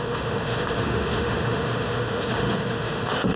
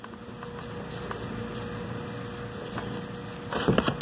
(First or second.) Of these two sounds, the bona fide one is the second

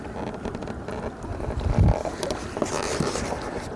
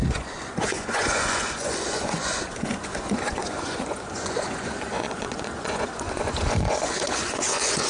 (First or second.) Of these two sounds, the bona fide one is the first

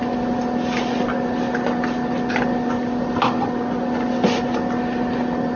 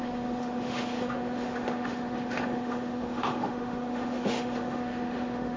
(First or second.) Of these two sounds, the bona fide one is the first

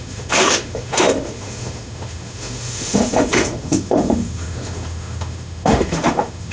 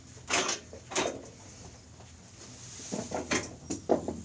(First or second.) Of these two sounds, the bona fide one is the second